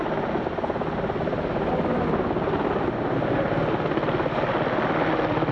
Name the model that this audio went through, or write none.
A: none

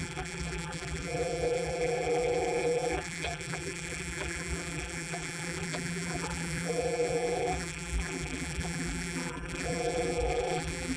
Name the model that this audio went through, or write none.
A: vocoder, BigVGAN v2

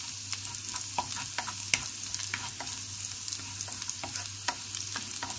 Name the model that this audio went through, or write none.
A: none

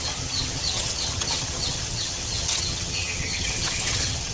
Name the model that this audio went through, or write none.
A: vocoder, HiFi-GAN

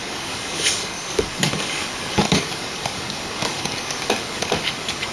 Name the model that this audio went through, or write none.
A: codec, DAC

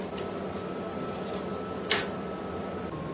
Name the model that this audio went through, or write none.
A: none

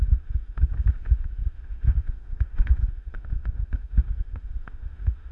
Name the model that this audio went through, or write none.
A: autoencoder, DAC-VAE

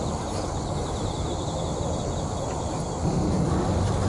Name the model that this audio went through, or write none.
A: none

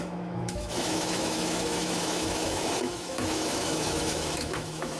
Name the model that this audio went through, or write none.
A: autoencoder, DAC-VAE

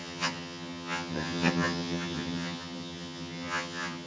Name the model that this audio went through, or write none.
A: vocoder, HiFi-GAN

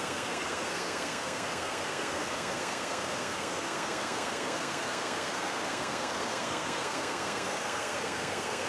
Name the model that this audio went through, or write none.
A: codec, SNAC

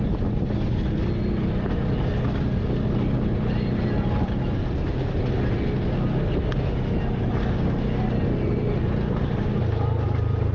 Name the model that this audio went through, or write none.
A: none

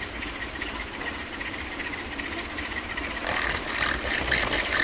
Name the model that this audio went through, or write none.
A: vocoder, BigVGAN v2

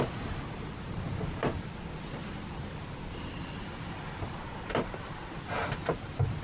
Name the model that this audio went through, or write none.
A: none